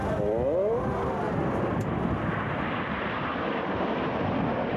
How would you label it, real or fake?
real